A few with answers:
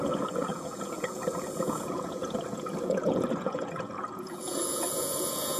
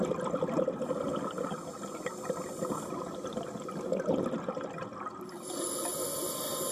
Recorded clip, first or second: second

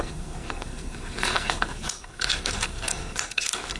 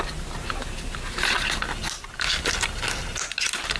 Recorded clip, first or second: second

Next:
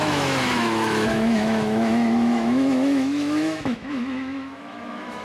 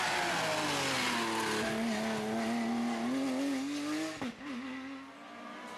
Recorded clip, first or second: second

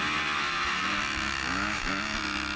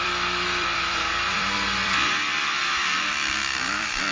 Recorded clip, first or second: first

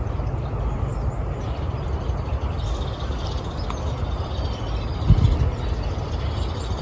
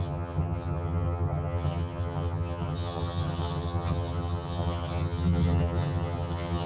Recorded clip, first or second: first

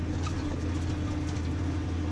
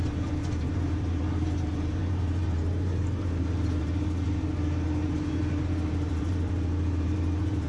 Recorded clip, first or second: first